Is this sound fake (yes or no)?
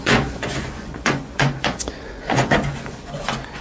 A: yes